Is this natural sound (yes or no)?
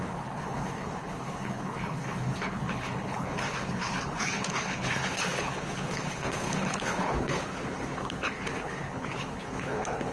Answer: no